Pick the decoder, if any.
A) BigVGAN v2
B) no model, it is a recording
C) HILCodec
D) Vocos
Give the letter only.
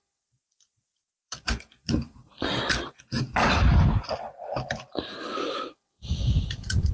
A